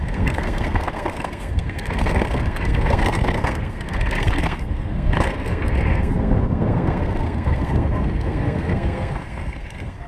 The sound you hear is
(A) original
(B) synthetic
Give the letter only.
B